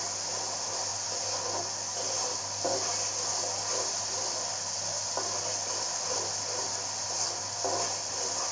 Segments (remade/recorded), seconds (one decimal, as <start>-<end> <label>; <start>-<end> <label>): 0.0-8.5 recorded